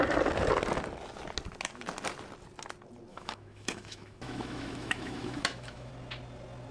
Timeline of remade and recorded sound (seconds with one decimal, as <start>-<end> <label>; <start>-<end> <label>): 0.0-3.1 recorded; 3.1-5.9 remade; 5.9-6.7 recorded